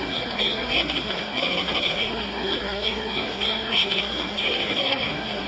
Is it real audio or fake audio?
fake